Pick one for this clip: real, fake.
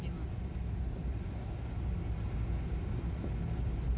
real